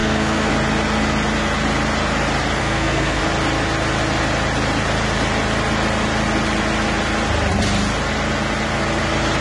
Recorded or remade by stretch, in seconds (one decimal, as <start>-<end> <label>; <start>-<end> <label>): 0.0-0.5 remade; 0.5-2.6 recorded; 2.6-3.2 remade; 3.2-9.4 recorded